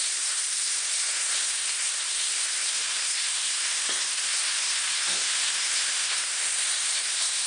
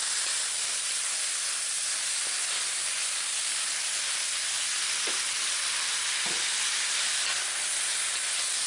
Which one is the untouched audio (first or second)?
second